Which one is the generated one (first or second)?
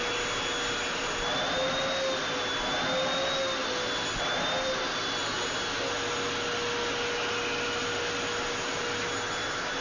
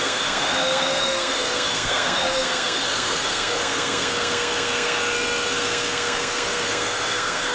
second